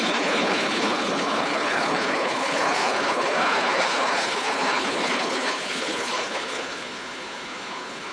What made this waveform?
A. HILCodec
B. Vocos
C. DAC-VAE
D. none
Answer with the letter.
A